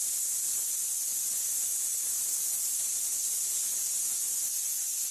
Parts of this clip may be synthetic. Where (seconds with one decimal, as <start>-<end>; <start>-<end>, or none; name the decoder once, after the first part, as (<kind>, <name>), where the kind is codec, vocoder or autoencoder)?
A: 0.0-5.1 (vocoder, BigVGAN v2)